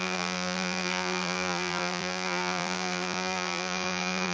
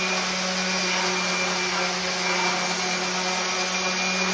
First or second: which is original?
second